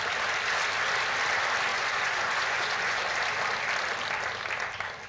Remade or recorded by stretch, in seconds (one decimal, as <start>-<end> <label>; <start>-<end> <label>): 0.0-1.7 recorded; 1.7-3.0 remade; 3.0-5.1 recorded